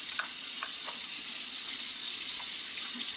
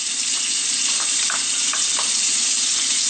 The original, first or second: second